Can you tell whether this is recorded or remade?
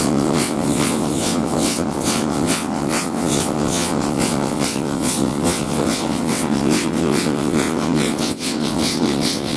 remade